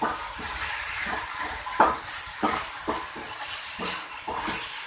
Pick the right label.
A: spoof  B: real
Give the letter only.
B